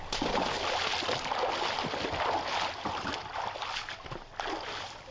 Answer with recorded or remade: recorded